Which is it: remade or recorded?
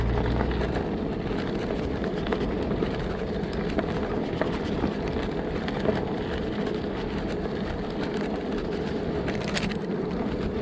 recorded